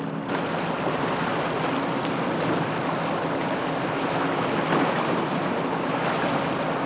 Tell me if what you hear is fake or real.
real